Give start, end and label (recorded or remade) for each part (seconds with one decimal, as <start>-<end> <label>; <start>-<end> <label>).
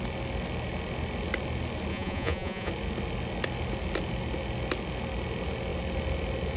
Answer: 0.0-1.9 recorded; 1.9-2.7 remade; 2.7-6.6 recorded